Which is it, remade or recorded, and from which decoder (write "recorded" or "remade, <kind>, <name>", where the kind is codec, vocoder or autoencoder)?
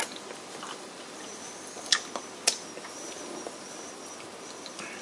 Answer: recorded